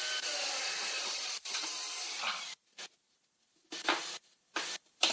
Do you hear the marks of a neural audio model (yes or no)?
no